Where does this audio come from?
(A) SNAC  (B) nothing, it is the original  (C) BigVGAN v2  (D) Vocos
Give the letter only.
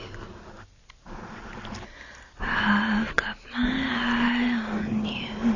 B